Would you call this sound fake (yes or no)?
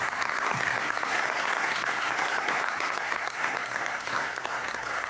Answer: yes